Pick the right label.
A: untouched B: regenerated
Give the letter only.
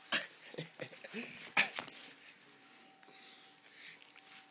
A